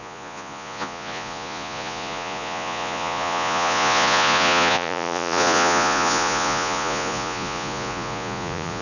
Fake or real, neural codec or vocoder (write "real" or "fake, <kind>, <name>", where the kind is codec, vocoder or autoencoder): fake, vocoder, Vocos